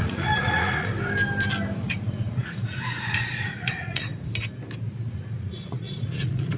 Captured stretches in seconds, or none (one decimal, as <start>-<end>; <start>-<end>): 0.9-1.8; 4.1-5.1